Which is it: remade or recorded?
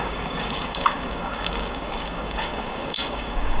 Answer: remade